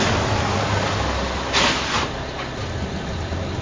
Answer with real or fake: real